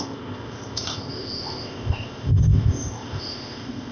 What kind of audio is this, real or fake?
fake